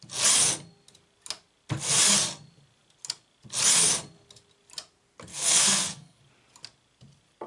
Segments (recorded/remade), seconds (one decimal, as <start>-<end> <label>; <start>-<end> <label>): 0.0-5.3 recorded; 5.3-6.2 remade; 6.2-7.5 recorded